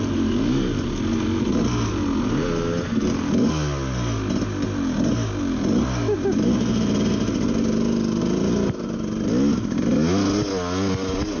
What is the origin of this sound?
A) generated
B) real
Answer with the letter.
B